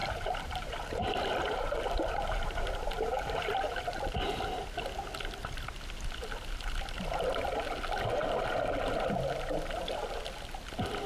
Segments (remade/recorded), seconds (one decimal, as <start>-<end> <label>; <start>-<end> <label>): 0.0-4.4 remade; 4.4-11.1 recorded